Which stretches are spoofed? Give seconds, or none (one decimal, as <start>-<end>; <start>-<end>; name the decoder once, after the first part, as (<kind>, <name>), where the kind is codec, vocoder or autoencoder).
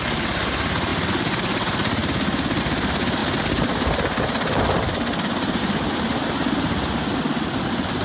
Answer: none